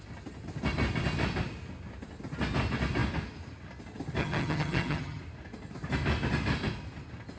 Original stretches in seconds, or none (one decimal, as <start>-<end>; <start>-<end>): 0.0-4.2; 5.2-7.4